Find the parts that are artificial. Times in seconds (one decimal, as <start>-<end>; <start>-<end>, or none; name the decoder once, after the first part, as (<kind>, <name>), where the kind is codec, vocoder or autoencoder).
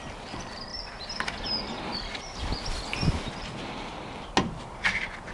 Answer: none